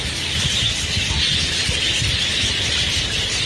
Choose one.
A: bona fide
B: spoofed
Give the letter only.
A